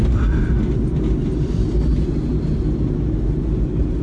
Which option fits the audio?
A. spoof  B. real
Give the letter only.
B